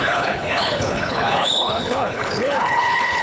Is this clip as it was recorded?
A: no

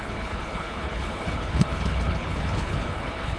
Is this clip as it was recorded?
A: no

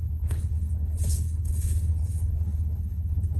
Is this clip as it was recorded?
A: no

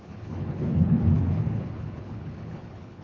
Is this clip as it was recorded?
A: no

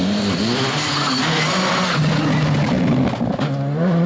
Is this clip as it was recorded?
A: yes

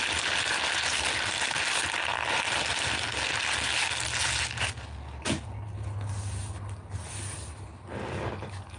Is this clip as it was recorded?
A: yes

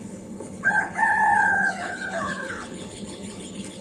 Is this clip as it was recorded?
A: no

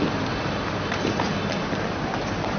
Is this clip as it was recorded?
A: yes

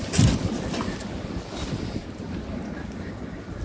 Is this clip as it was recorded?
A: yes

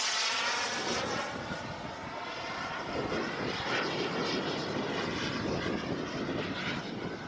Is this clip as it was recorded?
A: yes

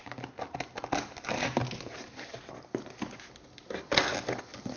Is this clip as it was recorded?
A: yes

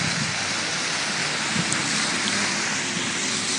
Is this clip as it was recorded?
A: yes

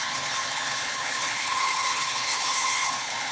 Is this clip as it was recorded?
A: no